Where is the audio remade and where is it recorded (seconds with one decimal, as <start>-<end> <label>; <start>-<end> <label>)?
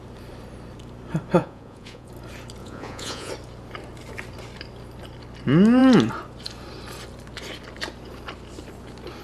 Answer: 0.0-1.4 recorded; 1.4-2.1 remade; 2.1-2.6 recorded; 2.6-3.3 remade; 3.3-9.2 recorded